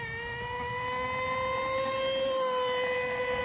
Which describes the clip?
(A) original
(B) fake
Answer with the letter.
A